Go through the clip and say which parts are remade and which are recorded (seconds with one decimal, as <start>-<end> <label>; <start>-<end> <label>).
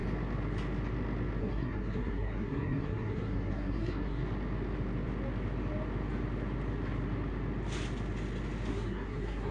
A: 0.0-1.4 recorded; 1.4-4.2 remade; 4.2-8.7 recorded; 8.7-9.5 remade